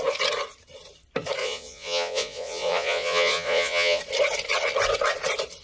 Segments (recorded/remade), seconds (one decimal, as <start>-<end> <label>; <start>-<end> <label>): 0.0-1.4 recorded; 1.4-4.0 remade; 4.0-5.6 recorded